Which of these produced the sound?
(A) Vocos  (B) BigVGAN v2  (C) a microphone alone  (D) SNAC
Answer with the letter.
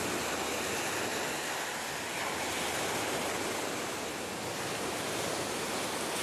C